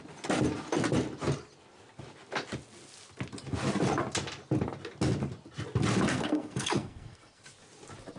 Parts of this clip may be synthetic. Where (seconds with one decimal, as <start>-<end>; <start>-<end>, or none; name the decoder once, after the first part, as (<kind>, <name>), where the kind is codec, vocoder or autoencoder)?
6.1-7.4 (codec, SNAC)